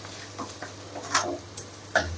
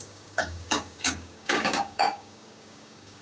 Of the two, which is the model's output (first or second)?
second